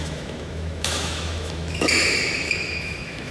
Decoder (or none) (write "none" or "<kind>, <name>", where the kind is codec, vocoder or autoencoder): autoencoder, DAC-VAE